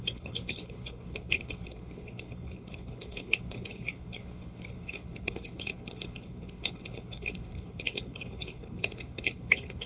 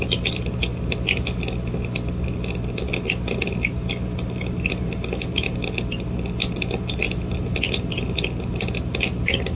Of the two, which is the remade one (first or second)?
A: first